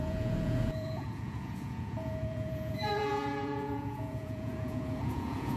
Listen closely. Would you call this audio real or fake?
fake